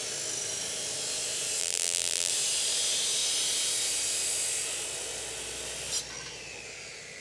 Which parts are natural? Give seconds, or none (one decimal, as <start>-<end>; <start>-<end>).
0.0-1.6; 2.3-7.2